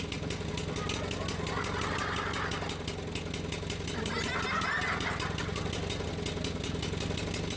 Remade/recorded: recorded